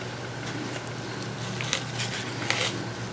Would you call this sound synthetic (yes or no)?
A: no